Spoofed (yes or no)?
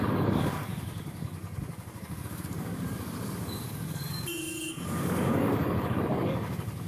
yes